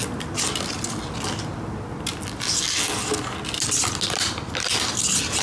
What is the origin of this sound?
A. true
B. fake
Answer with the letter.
A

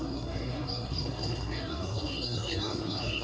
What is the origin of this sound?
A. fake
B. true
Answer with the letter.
A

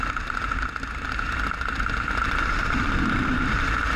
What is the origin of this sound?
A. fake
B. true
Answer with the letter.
B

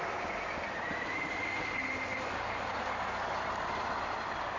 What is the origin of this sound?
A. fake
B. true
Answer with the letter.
B